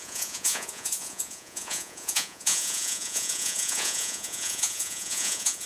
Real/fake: fake